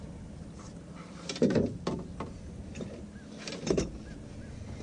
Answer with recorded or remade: recorded